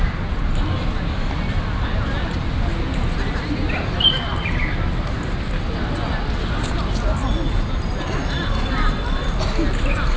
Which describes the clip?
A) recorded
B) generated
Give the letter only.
A